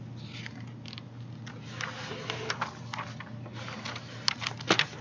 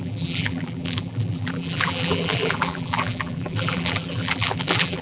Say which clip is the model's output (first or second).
second